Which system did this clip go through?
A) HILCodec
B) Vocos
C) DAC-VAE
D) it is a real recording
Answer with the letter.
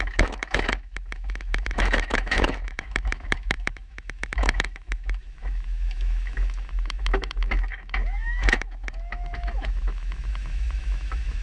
C